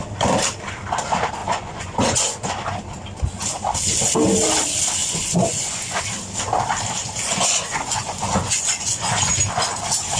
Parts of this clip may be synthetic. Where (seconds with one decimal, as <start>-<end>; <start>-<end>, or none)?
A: 1.4-2.5; 5.0-6.0; 7.0-9.3